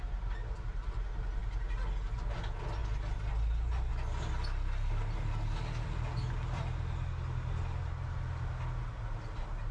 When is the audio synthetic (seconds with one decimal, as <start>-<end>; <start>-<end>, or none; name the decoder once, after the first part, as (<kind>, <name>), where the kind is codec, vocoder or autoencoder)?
none